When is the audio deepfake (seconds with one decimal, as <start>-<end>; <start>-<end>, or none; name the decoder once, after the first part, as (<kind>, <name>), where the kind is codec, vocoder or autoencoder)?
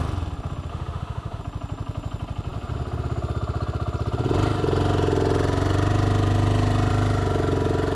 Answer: 0.7-1.4 (autoencoder, DAC-VAE)